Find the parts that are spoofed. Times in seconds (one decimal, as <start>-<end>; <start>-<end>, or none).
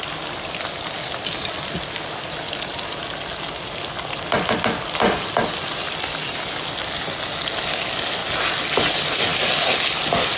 none